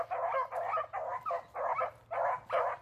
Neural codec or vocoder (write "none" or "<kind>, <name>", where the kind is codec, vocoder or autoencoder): none